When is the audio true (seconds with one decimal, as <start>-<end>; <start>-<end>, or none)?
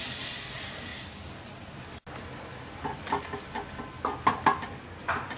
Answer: 0.0-5.4